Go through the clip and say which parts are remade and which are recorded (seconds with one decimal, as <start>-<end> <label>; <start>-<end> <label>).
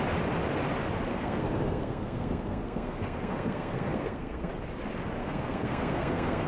0.0-1.1 recorded; 1.1-4.5 remade; 4.5-5.2 recorded; 5.2-6.5 remade